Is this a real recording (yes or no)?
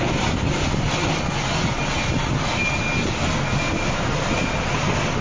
yes